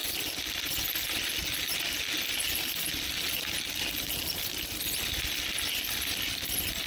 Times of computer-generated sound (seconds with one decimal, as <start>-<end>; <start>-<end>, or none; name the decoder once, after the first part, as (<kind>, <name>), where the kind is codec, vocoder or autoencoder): none